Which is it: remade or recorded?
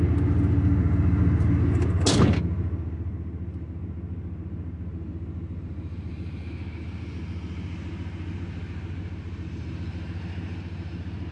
recorded